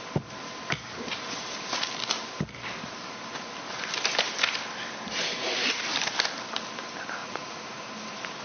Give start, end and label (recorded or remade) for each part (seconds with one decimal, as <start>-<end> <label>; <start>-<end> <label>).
0.0-7.2 recorded; 7.2-7.9 remade; 7.9-8.4 recorded